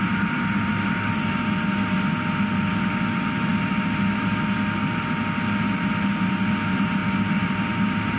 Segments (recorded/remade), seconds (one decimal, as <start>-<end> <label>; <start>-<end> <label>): 0.0-8.2 recorded